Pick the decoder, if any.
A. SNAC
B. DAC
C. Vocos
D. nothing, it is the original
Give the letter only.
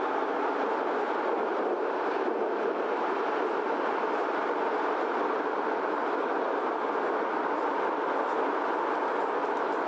D